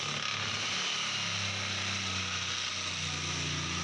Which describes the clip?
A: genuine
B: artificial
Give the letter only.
A